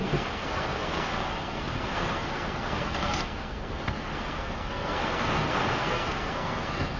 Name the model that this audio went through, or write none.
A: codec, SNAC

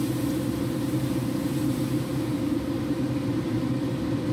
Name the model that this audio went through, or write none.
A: none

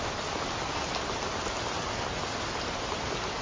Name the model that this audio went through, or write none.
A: none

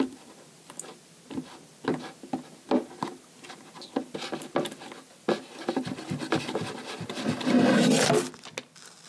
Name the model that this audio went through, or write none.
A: none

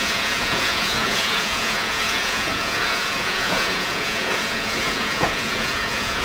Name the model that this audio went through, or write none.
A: vocoder, Vocos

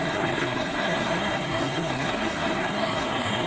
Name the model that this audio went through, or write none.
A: codec, SNAC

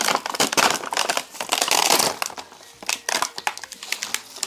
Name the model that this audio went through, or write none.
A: none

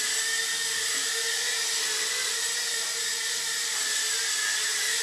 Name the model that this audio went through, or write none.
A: none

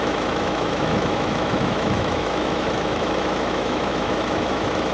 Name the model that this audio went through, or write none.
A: autoencoder, DAC-VAE